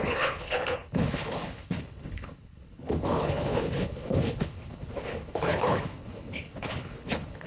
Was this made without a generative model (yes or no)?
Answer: no